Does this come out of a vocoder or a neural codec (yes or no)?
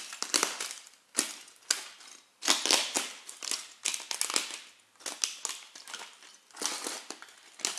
no